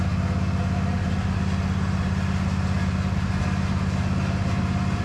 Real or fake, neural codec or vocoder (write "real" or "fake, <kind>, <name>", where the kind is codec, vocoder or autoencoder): real